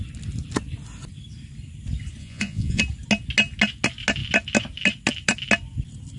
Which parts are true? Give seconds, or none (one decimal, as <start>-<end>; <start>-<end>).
0.0-2.2; 2.8-6.2